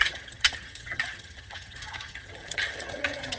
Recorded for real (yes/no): no